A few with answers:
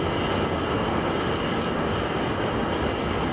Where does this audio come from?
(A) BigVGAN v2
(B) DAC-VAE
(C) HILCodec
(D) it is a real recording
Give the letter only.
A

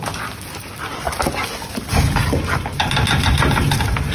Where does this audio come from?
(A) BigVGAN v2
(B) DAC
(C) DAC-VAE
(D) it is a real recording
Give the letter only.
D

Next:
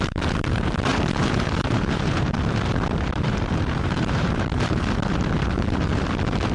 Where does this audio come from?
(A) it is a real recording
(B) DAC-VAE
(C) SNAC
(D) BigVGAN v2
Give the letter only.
D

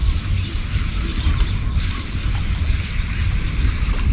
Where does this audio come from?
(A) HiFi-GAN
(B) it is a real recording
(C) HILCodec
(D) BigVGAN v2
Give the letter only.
B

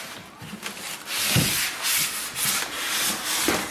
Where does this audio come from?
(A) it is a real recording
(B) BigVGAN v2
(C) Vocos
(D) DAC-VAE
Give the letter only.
A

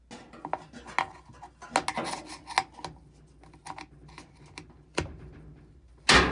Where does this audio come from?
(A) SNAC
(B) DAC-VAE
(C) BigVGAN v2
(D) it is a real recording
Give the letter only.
D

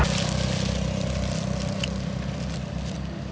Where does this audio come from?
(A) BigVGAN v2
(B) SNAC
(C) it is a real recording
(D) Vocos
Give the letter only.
C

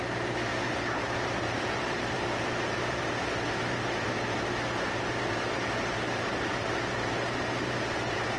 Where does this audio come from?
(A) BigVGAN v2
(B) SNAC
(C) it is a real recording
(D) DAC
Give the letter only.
A